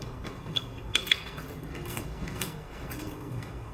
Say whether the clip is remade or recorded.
remade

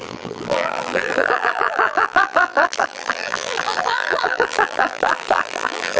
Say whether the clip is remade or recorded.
remade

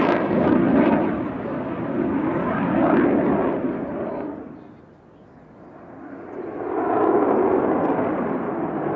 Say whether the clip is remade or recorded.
recorded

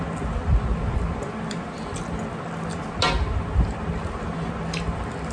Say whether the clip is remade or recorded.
recorded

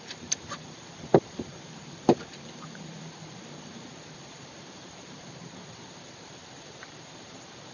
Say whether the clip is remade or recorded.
remade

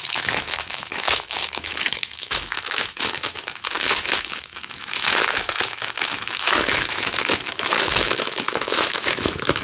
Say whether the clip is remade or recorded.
remade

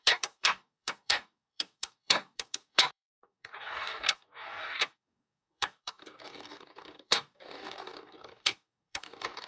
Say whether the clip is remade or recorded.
remade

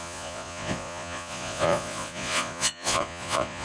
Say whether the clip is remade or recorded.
remade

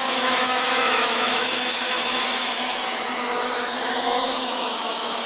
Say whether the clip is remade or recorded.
remade